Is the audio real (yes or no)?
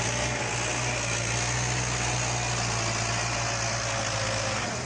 yes